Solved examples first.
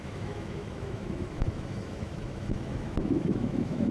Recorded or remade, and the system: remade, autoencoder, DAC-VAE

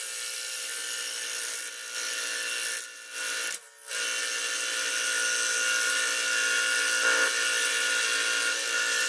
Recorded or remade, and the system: recorded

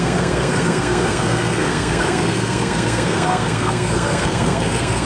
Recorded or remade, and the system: remade, codec, SNAC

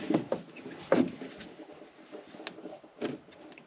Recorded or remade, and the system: recorded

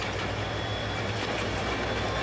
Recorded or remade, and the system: recorded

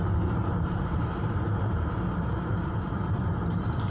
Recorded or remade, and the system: remade, vocoder, BigVGAN v2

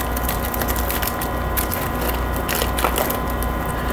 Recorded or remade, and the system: recorded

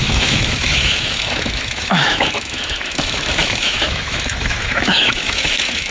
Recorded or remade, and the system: remade, autoencoder, DAC-VAE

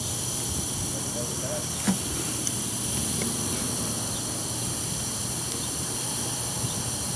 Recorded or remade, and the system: remade, vocoder, BigVGAN v2